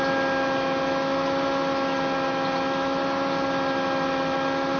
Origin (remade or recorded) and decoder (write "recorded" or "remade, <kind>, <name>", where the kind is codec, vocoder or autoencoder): recorded